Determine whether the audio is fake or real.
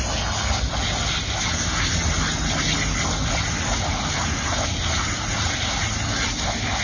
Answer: real